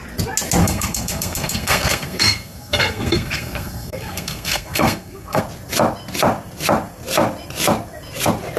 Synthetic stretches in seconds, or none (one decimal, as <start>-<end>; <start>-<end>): 0.6-5.4